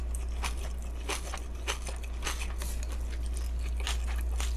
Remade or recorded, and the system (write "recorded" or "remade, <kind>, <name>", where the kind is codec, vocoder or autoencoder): recorded